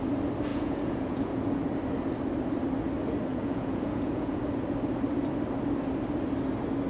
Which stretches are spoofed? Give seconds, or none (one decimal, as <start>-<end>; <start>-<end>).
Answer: 0.5-1.6; 3.3-4.4